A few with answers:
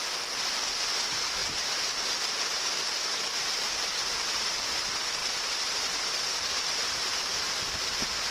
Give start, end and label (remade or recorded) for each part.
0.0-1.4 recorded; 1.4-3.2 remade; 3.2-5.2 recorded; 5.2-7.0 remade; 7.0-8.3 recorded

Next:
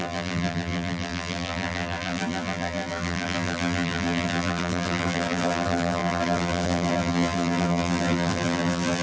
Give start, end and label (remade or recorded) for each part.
0.0-9.0 remade

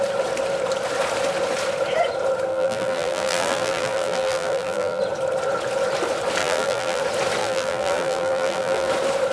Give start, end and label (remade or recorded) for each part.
0.0-2.5 recorded; 2.5-5.0 remade; 5.0-6.4 recorded; 6.4-7.0 remade; 7.0-7.4 recorded; 7.4-8.9 remade; 8.9-9.3 recorded

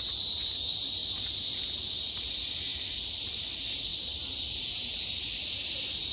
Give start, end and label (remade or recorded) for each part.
0.0-1.0 remade; 1.0-2.3 recorded; 2.3-6.1 remade